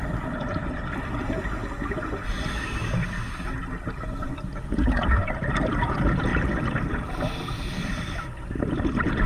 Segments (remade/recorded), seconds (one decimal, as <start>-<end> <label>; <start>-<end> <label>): 0.0-1.6 remade; 1.6-5.2 recorded; 5.2-6.3 remade; 6.3-6.9 recorded; 6.9-9.3 remade